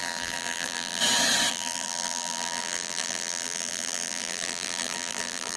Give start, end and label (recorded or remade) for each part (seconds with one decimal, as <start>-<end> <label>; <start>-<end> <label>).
0.0-1.0 remade; 1.0-1.5 recorded; 1.5-5.6 remade